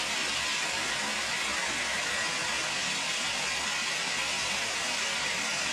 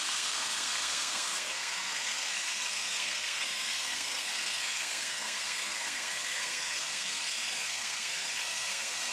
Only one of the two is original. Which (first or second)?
first